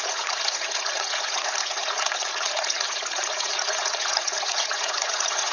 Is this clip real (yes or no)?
no